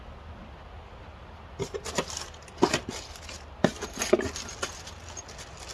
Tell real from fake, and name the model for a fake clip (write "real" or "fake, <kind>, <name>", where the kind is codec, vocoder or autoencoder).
real